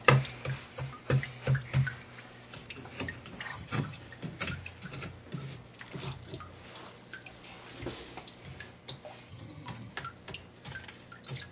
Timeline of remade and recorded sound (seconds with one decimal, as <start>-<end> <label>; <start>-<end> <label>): 0.0-3.5 recorded; 3.5-4.0 remade; 4.0-9.3 recorded; 9.3-9.9 remade; 9.9-11.5 recorded